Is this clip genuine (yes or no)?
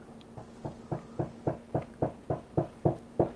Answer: yes